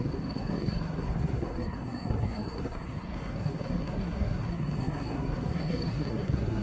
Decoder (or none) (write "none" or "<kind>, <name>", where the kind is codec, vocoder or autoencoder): codec, SNAC